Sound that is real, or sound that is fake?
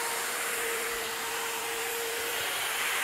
fake